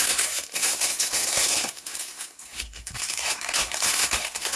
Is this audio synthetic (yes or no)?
yes